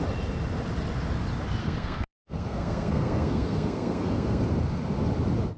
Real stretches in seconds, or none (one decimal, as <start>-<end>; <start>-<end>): 0.0-1.6; 4.4-5.6